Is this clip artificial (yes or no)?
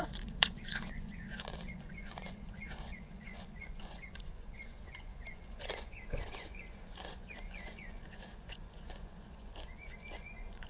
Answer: yes